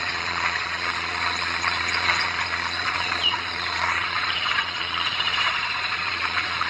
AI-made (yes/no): yes